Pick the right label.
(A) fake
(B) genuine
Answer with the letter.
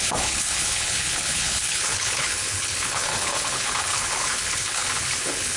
A